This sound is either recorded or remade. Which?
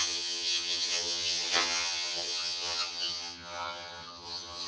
remade